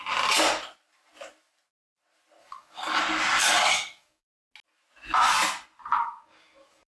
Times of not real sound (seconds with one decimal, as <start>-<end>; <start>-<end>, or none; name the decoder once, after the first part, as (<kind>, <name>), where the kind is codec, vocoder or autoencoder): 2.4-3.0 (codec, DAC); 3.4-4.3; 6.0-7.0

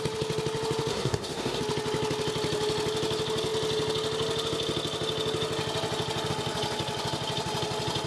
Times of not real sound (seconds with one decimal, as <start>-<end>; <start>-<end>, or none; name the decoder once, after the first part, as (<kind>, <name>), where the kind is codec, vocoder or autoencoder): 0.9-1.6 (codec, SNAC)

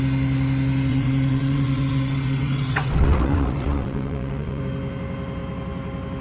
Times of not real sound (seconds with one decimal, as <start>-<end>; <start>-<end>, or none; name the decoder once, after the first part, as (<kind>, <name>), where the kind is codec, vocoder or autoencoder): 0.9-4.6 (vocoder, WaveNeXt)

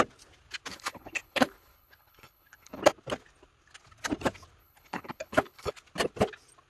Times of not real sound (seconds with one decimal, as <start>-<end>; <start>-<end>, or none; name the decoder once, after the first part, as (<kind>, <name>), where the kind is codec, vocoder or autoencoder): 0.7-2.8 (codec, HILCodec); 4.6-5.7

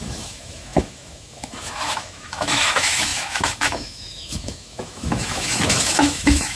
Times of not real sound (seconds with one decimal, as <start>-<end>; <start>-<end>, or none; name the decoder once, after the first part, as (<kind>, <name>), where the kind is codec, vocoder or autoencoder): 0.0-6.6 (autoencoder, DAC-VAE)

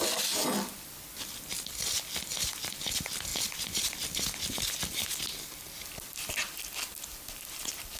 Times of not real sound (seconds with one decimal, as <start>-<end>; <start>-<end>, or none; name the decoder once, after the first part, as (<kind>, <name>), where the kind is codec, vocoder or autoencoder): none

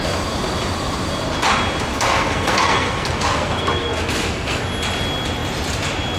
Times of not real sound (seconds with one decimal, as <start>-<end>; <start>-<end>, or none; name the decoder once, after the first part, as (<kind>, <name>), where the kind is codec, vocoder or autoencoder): 1.9-4.6 (codec, SNAC)